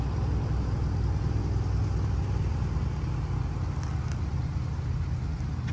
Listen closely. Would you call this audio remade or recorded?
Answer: recorded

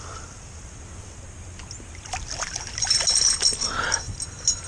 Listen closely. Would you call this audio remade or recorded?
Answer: recorded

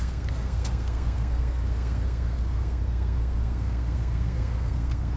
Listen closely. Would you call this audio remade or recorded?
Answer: remade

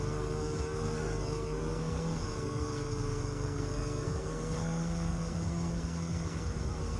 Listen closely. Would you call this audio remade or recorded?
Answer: remade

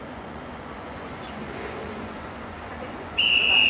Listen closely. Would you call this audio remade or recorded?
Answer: remade